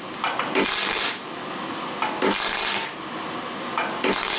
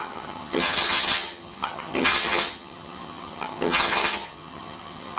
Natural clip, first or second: first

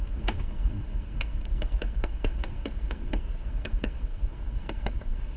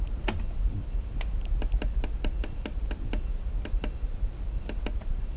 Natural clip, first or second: second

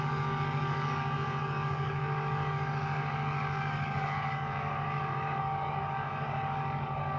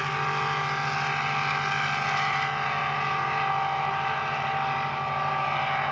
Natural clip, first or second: second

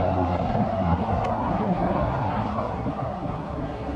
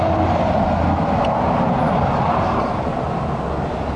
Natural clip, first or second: second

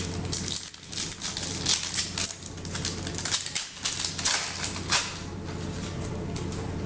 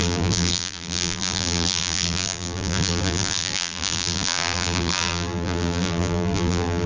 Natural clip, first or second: first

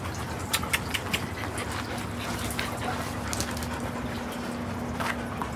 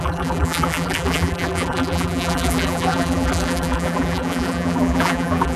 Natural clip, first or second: first